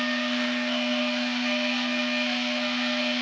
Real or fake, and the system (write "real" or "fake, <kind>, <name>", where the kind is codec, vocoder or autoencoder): fake, codec, SNAC